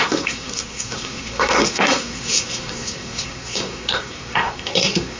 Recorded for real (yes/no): no